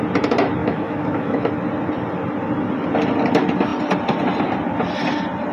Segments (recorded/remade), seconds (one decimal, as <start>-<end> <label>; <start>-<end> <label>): 0.0-0.6 recorded; 0.6-1.5 remade; 1.5-5.5 recorded